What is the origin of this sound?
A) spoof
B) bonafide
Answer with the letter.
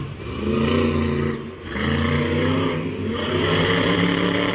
B